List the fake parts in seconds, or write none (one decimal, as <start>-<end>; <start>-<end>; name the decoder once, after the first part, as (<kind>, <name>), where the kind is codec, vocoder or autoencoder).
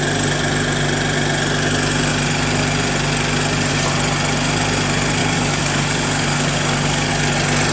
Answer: 5.2-7.1 (codec, DAC)